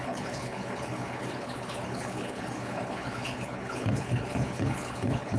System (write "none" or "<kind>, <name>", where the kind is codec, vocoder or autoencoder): codec, HILCodec